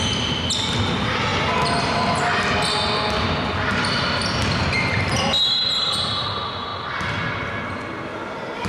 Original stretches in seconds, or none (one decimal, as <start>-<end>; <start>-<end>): 0.0-8.7

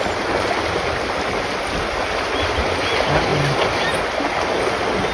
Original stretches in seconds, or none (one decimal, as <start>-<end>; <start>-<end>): 0.0-5.1